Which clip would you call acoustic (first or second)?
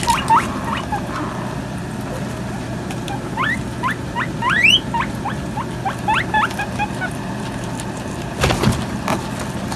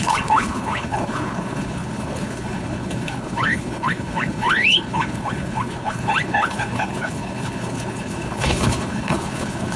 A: first